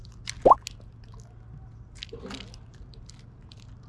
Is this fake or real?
real